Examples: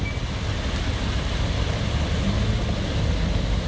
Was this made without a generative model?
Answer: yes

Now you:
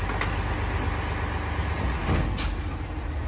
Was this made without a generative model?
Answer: yes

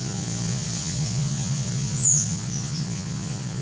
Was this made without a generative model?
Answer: no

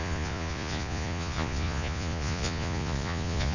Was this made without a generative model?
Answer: no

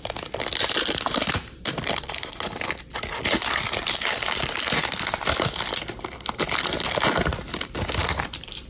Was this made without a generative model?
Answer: yes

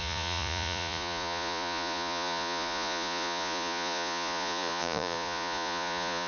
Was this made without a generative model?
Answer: no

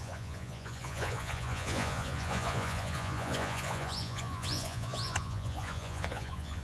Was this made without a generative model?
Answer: no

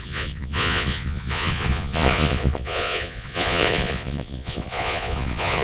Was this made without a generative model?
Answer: no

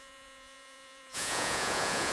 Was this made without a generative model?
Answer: no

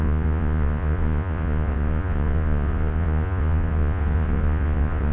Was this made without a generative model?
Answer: no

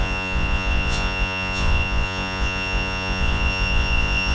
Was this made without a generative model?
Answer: no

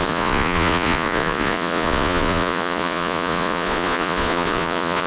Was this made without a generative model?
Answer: no